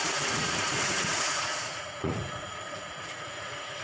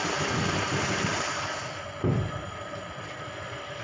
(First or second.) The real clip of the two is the second